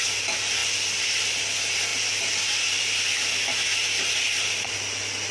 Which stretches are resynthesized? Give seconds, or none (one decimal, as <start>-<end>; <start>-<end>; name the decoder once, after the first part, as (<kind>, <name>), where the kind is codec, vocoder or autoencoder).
none